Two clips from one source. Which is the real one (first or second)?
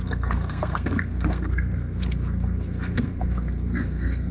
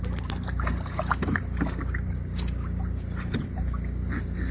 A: second